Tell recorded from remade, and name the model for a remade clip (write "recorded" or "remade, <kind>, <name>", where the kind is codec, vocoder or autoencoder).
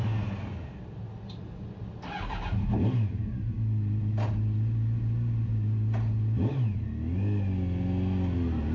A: recorded